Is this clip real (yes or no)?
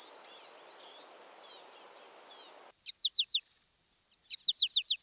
yes